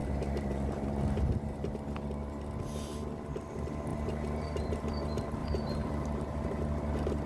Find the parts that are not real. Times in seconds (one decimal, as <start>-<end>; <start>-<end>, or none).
0.0-1.7; 3.9-4.9; 5.4-6.6